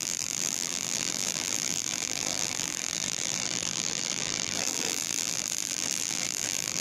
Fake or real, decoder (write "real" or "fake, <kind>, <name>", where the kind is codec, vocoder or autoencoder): fake, vocoder, BigVGAN v2